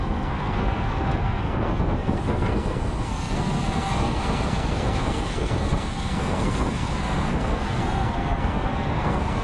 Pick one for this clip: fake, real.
fake